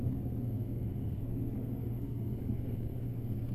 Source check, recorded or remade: remade